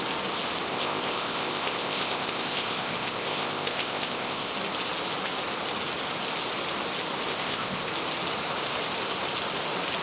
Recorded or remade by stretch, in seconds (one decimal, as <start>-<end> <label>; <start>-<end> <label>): 0.0-0.7 recorded; 0.7-4.5 remade; 4.5-7.3 recorded; 7.3-7.9 remade; 7.9-10.0 recorded